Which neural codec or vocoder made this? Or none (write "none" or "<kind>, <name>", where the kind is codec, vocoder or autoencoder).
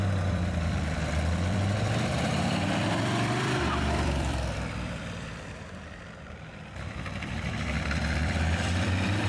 vocoder, BigVGAN v2